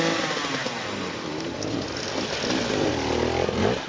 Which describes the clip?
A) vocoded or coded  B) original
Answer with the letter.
B